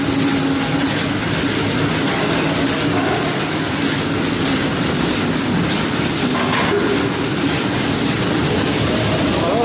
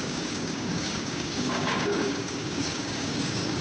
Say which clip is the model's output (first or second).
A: second